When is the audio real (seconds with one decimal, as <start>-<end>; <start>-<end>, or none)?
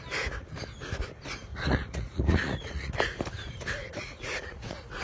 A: 0.0-1.5; 2.9-3.8